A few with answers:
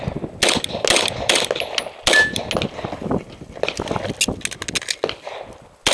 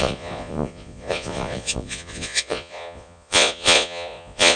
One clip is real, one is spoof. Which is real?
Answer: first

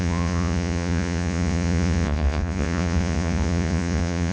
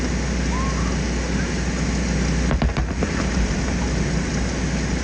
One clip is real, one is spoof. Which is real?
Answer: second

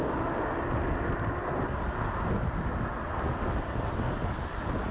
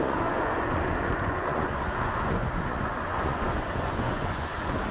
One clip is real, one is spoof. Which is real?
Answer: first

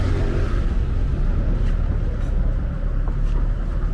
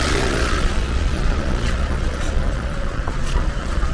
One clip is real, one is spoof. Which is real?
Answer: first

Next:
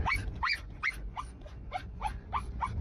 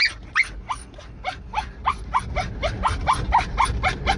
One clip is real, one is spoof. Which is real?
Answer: second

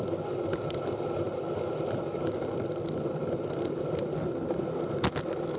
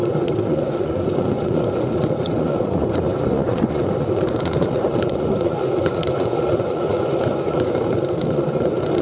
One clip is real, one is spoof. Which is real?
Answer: first